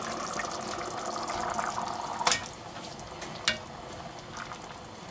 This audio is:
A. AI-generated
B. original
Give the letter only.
B